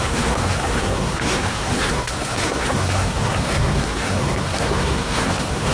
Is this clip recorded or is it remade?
remade